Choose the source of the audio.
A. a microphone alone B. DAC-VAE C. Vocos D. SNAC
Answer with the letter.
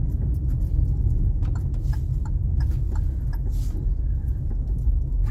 A